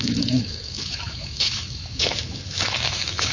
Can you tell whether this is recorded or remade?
remade